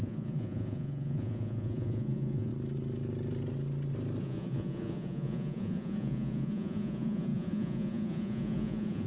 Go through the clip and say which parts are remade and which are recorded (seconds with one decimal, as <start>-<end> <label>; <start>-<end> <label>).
0.0-2.5 remade; 2.5-4.2 recorded; 4.2-9.1 remade